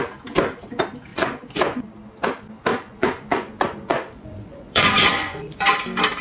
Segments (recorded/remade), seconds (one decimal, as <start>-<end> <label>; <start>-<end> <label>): 0.0-1.1 recorded; 1.1-1.9 remade; 1.9-2.7 recorded; 2.7-5.7 remade; 5.7-6.2 recorded